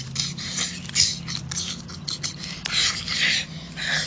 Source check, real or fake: fake